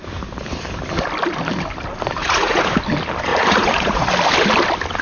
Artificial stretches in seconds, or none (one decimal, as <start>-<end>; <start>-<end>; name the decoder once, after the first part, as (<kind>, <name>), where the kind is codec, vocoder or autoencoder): 2.2-2.7 (vocoder, Vocos); 3.3-4.1

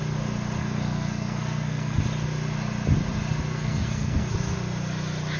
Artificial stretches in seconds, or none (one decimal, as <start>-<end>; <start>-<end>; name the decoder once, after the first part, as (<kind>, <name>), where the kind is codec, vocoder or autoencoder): 0.6-2.0 (codec, SNAC); 3.5-4.3

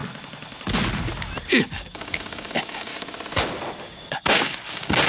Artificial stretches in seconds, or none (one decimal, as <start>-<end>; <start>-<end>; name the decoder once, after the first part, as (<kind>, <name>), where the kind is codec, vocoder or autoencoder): 1.6-2.9 (codec, DAC); 3.8-5.1

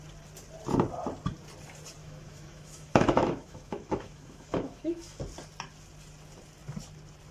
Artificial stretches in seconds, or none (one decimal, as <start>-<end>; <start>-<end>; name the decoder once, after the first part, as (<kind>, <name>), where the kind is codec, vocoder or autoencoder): 2.0-5.2 (autoencoder, DAC-VAE)